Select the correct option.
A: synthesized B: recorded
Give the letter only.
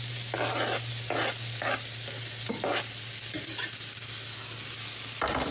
B